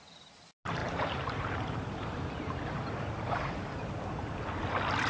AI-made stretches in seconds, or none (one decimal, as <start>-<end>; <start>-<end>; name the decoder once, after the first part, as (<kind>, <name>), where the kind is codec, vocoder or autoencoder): 0.8-3.9 (vocoder, BigVGAN v2)